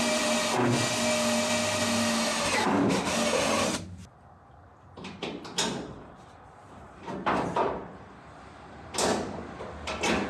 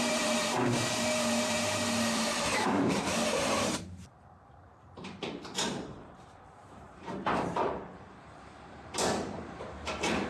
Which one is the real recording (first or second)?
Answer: first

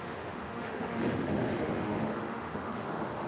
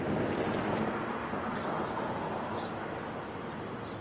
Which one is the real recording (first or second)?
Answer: second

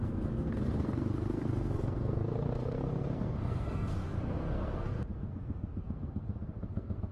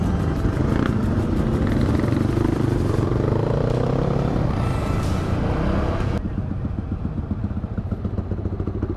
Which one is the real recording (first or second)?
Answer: second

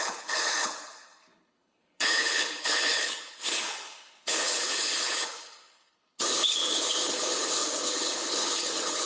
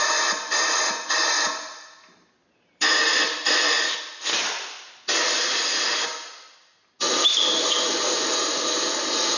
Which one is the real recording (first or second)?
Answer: second